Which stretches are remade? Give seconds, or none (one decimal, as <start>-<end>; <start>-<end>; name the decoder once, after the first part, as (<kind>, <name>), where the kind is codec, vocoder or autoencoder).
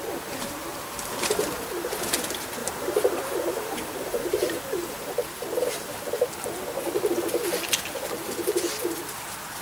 0.7-1.2 (vocoder, BigVGAN v2); 2.6-5.1